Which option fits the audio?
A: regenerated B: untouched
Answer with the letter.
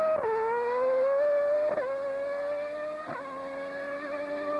B